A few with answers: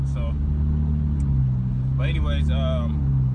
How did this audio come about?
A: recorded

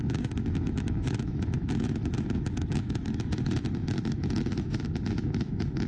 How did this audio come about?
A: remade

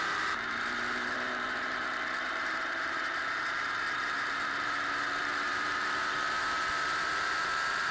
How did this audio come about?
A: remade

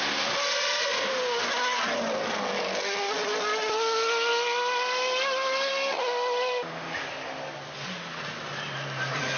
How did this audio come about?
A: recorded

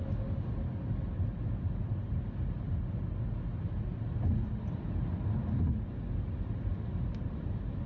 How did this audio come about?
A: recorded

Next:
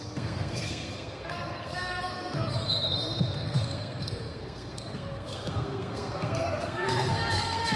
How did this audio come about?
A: remade